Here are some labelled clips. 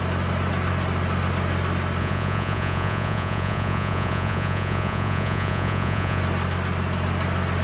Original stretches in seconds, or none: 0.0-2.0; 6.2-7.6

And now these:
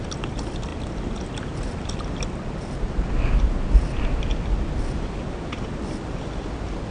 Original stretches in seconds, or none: 0.0-6.9

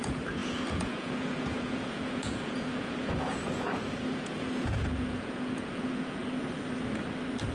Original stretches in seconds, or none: 6.2-7.5

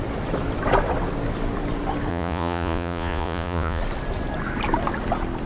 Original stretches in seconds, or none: 0.0-2.1; 3.8-5.5

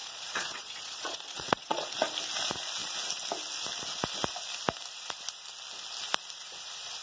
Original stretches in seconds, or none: 1.9-7.0

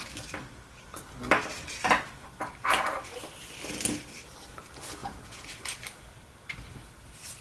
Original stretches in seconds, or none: 0.0-5.0; 5.8-7.4

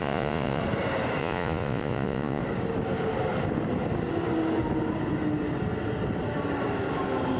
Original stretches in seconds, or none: 0.6-1.2; 2.4-7.4

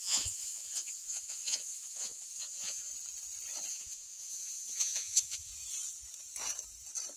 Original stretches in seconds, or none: 2.9-3.7; 5.5-7.2